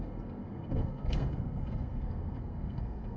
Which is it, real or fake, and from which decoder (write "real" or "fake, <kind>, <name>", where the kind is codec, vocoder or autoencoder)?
fake, codec, SNAC